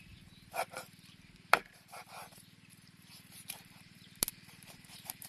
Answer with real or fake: fake